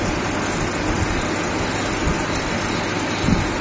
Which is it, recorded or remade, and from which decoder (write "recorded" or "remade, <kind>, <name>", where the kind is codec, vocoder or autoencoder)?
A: recorded